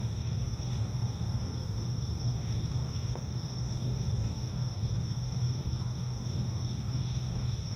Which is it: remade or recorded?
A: remade